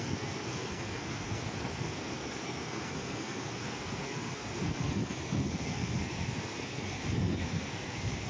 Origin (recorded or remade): remade